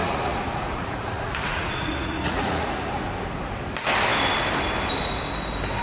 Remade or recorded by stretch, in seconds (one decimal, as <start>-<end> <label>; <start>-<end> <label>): 0.0-3.0 remade; 3.0-5.8 recorded